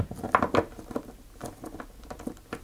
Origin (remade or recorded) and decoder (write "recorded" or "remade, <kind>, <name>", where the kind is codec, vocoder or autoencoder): recorded